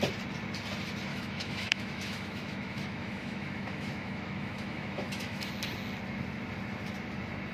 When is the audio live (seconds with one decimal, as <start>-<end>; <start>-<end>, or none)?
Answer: 0.0-1.1; 5.5-7.5